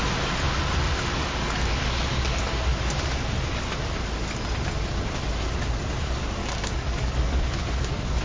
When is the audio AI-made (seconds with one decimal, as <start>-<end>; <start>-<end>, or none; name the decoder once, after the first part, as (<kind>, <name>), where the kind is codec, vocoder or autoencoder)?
1.2-2.4 (codec, DAC); 6.4-7.6